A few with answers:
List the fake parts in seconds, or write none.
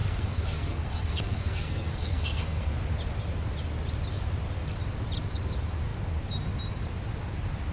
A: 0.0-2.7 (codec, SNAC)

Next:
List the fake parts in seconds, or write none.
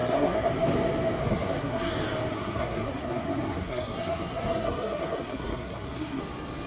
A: 0.0-0.5 (codec, SNAC); 1.2-1.9; 2.3-6.2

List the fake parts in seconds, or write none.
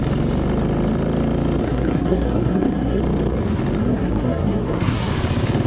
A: 1.6-3.0 (codec, SNAC); 3.8-5.1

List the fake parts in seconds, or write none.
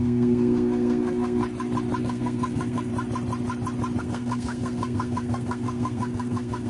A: 0.0-1.4 (codec, SNAC); 2.0-2.9; 4.0-6.7